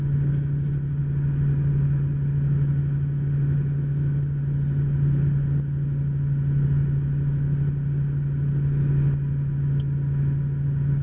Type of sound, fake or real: real